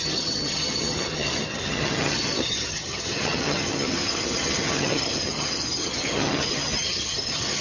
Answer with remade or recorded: remade